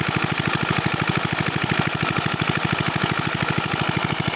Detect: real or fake real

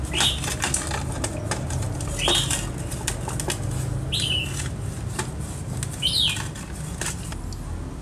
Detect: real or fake real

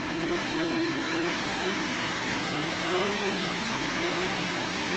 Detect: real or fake fake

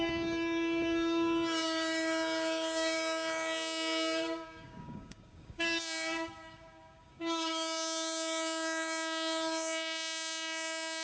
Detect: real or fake fake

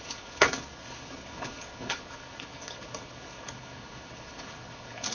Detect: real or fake fake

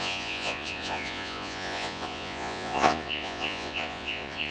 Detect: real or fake fake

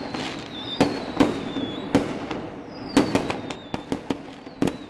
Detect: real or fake real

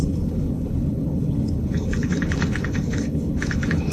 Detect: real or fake fake